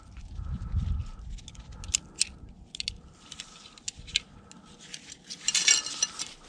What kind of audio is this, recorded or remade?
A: recorded